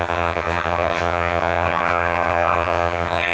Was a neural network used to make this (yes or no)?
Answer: yes